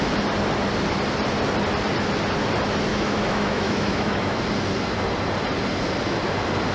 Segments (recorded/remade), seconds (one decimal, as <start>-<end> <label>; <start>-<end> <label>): 0.0-2.9 recorded; 2.9-4.4 remade; 4.4-6.7 recorded